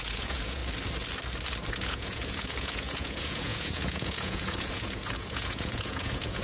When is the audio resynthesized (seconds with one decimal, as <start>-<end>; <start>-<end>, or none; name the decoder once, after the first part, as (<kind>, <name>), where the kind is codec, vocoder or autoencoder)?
0.0-0.6 (vocoder, Vocos); 1.7-6.4